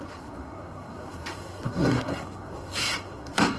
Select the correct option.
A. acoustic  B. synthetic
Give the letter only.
B